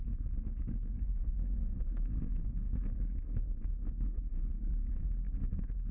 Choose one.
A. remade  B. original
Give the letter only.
A